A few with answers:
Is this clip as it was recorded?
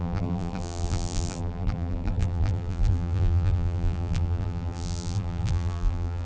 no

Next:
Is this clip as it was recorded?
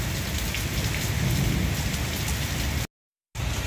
yes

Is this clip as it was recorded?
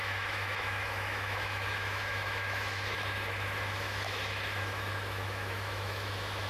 no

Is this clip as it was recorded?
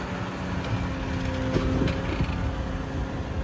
yes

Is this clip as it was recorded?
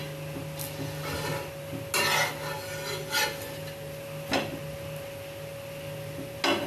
yes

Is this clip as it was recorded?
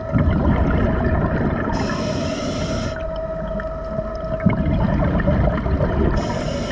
yes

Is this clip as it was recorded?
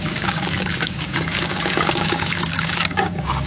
no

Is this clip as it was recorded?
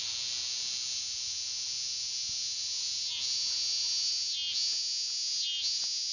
yes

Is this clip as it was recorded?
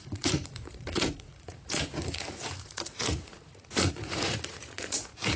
no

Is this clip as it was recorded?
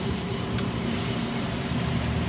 no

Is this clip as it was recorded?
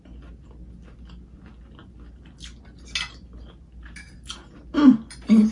yes